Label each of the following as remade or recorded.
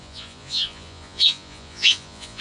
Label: remade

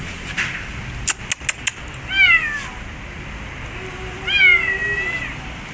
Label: recorded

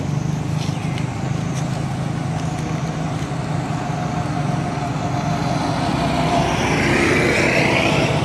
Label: recorded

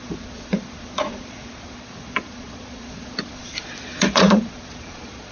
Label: remade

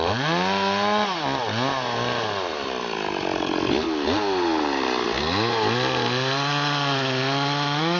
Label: recorded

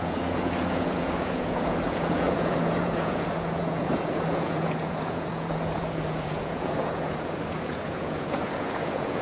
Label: remade